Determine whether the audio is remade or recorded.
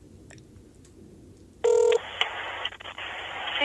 recorded